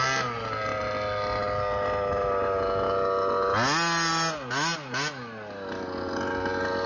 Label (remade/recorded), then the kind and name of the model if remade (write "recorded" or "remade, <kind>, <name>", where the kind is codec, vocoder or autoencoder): recorded